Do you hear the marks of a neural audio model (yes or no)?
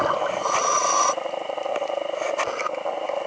no